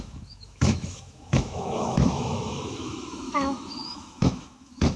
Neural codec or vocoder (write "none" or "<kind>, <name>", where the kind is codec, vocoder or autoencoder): autoencoder, DAC-VAE